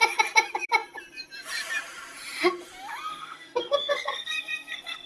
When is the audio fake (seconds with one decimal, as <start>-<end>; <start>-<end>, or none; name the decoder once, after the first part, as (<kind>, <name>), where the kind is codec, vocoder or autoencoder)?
3.1-5.1 (codec, SNAC)